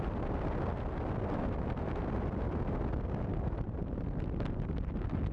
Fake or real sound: real